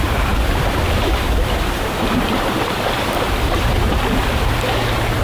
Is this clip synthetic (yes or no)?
yes